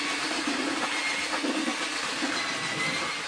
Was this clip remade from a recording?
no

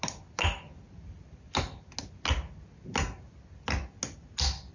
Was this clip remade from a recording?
no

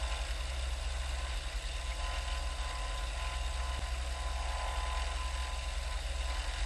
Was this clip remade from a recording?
no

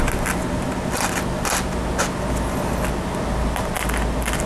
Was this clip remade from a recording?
no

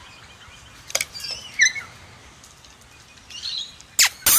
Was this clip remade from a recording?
no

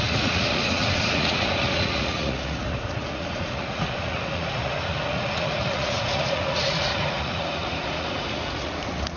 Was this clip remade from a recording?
yes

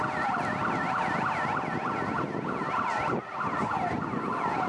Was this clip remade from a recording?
no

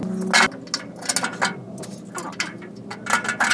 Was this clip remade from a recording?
no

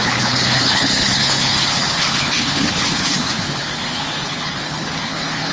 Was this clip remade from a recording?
yes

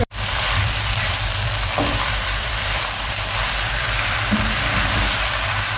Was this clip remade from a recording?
yes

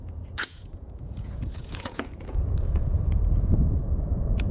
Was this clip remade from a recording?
yes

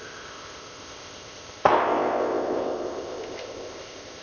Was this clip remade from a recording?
yes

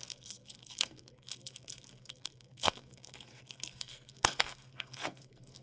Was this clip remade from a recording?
yes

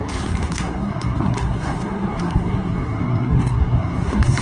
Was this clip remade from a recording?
yes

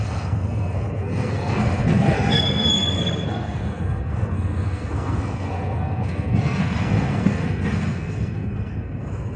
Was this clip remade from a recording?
yes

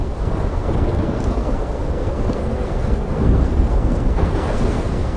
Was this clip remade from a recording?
yes